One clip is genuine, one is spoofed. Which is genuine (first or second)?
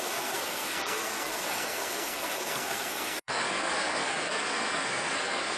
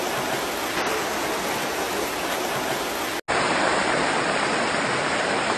second